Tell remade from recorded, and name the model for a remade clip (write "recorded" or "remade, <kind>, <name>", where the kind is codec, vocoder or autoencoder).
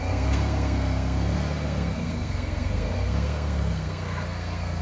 remade, codec, SNAC